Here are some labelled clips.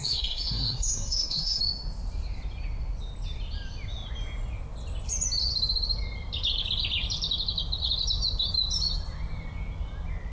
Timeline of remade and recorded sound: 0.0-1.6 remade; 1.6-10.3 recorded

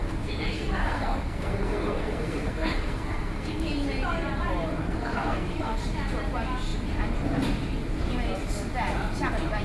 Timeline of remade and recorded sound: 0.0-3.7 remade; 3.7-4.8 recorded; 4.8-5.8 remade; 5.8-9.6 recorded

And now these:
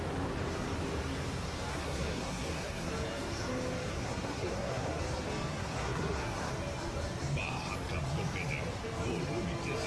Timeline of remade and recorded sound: 0.0-1.7 recorded; 1.7-2.9 remade; 2.9-3.9 recorded; 3.9-5.0 remade; 5.0-5.6 recorded; 5.6-6.5 remade; 6.5-9.9 recorded

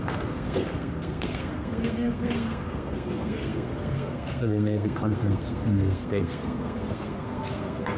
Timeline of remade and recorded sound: 0.0-8.0 remade